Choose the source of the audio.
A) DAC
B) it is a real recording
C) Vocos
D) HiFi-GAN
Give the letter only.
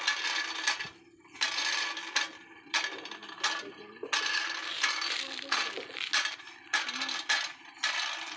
B